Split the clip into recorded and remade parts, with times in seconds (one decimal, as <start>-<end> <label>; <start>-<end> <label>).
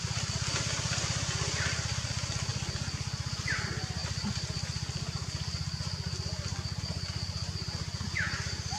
0.0-8.8 recorded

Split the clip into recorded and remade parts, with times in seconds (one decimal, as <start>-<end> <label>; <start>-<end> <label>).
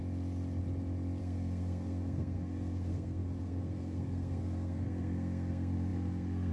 0.0-1.2 recorded; 1.2-6.5 remade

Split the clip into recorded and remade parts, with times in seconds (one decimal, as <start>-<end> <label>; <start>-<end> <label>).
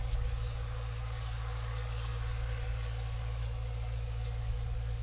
0.0-5.0 remade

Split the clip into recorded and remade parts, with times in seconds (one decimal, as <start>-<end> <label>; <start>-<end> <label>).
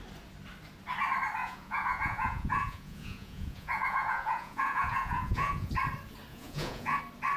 0.0-1.4 recorded; 1.4-5.7 remade; 5.7-6.3 recorded; 6.3-7.0 remade; 7.0-7.4 recorded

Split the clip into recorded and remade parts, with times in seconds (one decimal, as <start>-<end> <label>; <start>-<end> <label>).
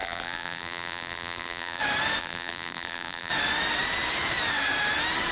0.0-1.8 remade; 1.8-2.2 recorded; 2.2-3.3 remade; 3.3-5.3 recorded